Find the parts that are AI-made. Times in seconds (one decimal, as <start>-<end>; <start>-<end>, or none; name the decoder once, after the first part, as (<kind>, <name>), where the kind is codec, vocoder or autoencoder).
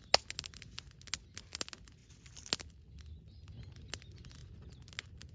none